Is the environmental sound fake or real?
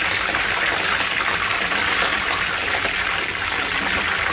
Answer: real